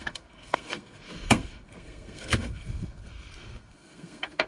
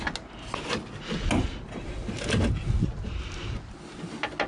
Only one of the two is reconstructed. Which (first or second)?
first